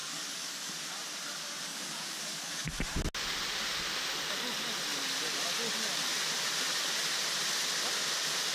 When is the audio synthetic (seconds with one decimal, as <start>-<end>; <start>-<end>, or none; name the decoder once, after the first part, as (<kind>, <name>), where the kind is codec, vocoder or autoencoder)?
0.0-0.7 (codec, DAC); 1.6-2.7